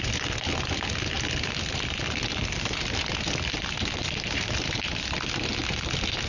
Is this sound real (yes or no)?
yes